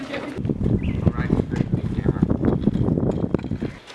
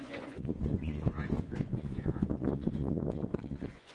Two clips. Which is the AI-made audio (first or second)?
second